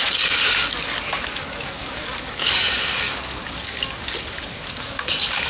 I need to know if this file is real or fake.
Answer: fake